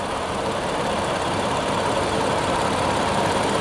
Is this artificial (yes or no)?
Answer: yes